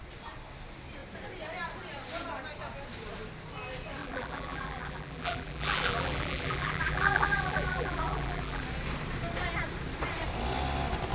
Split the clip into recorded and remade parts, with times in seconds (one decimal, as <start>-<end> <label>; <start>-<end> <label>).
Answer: 0.0-4.0 recorded; 4.0-8.6 remade; 8.6-11.1 recorded